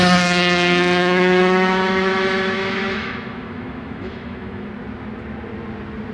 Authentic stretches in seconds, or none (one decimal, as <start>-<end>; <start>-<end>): 0.0-1.0; 4.7-6.1